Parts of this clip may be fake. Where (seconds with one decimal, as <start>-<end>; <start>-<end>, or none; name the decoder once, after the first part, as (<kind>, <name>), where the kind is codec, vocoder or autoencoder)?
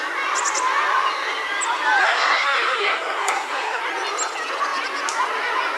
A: 2.0-3.8 (codec, SNAC)